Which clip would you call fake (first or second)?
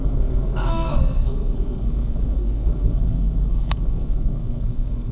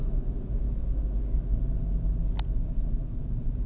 first